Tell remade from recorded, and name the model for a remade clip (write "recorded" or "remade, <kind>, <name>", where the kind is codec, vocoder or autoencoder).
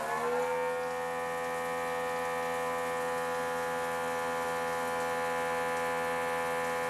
recorded